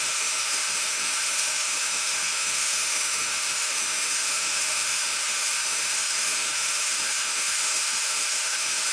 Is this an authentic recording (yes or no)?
no